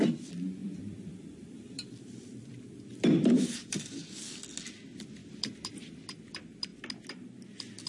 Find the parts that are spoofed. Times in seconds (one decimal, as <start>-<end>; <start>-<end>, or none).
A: 0.0-6.7

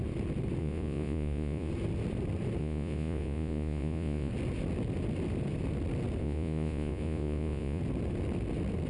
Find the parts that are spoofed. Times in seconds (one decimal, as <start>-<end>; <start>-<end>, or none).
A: 0.6-1.7; 2.6-4.3; 6.2-7.8

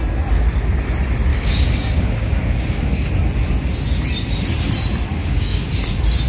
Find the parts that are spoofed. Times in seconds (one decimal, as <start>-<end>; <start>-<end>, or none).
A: 1.3-3.1; 5.1-5.7

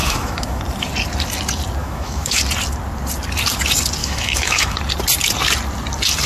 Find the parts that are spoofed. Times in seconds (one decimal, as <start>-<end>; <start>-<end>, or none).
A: 0.0-0.6; 1.8-2.4; 4.0-4.8

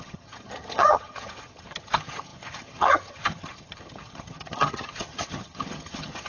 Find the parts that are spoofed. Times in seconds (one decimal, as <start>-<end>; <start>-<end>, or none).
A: 0.0-6.3

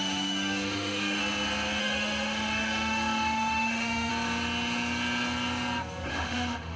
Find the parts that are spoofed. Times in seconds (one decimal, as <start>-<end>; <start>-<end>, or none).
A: 0.0-1.2; 1.8-4.1; 6.1-6.8

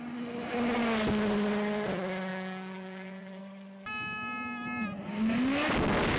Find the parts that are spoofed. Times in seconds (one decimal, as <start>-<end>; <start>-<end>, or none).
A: 2.3-3.4